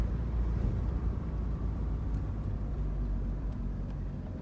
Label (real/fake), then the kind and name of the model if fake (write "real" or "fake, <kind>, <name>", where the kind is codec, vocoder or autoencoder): fake, vocoder, BigVGAN v2